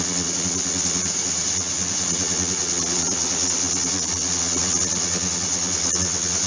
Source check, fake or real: fake